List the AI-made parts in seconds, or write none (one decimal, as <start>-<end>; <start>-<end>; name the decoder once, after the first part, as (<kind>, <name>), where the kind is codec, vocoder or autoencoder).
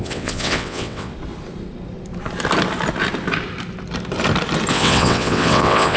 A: 0.0-1.1 (vocoder, WaveNeXt); 4.7-6.0